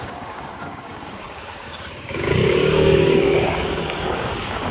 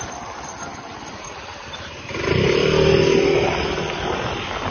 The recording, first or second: second